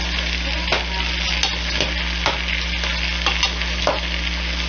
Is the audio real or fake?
real